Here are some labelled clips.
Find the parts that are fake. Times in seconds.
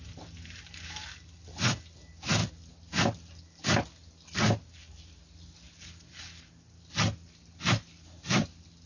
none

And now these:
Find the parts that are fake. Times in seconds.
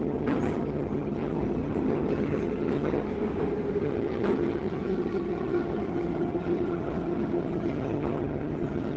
0.0-3.1 (vocoder, HiFi-GAN); 3.8-9.0